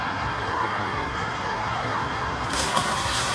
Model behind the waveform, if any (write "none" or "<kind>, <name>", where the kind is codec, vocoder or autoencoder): codec, SNAC